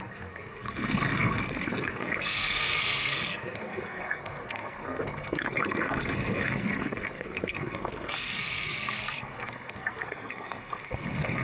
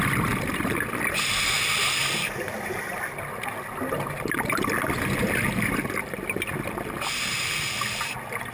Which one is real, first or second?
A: second